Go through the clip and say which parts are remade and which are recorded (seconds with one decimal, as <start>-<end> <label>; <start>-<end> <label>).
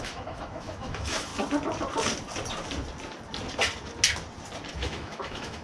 0.0-1.3 remade; 1.3-4.7 recorded; 4.7-5.6 remade